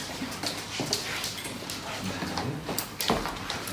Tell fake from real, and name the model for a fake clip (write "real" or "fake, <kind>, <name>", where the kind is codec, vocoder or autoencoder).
real